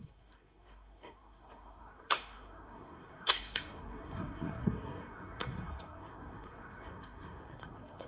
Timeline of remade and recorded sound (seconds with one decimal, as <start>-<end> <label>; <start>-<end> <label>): 0.0-8.1 remade